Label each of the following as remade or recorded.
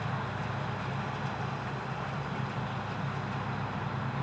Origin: recorded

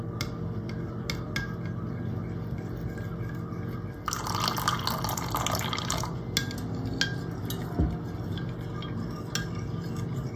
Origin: recorded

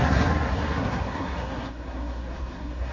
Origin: remade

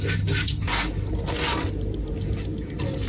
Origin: recorded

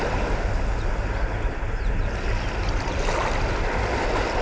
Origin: recorded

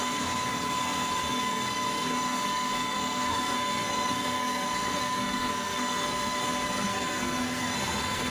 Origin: remade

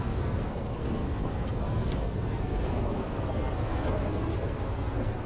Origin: remade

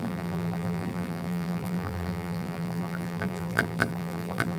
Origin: remade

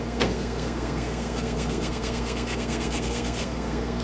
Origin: remade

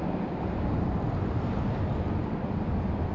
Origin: recorded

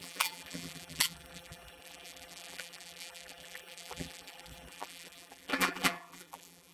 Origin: remade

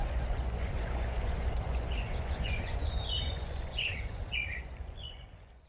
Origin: remade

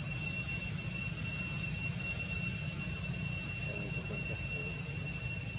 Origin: recorded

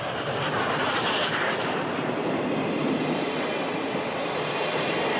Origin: recorded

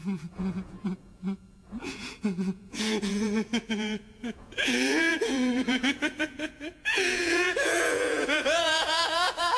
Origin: remade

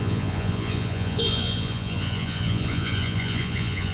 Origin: remade